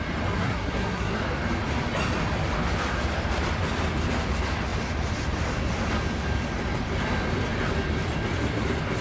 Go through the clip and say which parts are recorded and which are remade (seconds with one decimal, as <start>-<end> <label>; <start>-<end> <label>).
0.0-0.4 recorded; 0.4-1.2 remade; 1.2-9.0 recorded